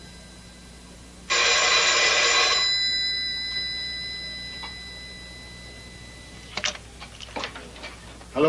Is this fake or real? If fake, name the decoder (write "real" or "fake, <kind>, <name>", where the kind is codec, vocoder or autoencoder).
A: real